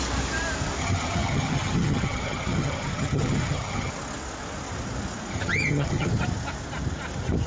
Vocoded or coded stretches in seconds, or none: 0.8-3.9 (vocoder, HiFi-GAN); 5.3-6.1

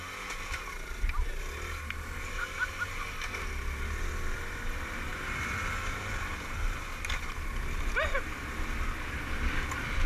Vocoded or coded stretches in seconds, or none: none

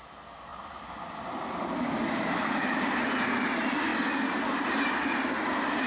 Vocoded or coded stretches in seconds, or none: 0.0-0.5 (vocoder, BigVGAN v2); 2.8-3.9

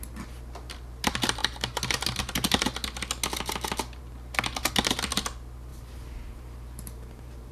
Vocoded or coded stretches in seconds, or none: 5.7-7.5 (vocoder, BigVGAN v2)

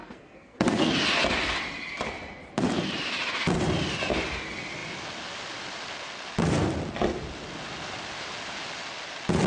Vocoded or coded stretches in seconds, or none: 0.0-0.9 (codec, SNAC)

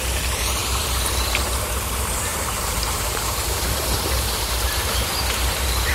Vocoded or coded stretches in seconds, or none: 0.6-1.4 (vocoder, BigVGAN v2); 2.3-5.9